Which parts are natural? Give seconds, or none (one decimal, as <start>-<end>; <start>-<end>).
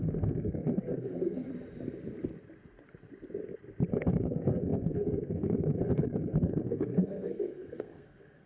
1.5-3.9